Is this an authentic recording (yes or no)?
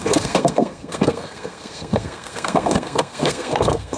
no